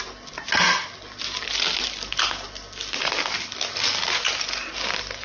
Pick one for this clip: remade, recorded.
recorded